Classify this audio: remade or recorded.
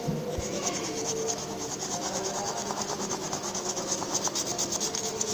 remade